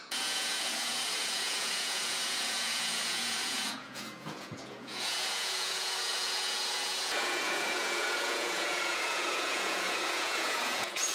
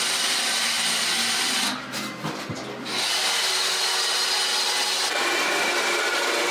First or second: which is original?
second